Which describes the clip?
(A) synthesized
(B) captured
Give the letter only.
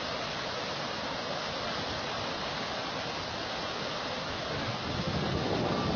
B